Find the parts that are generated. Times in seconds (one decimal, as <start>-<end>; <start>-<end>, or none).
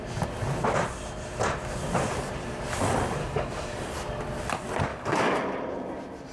3.2-3.9; 4.9-5.4